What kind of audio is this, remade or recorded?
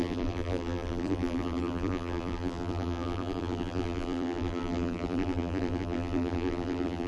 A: remade